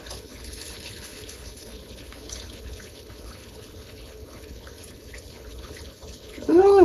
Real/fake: fake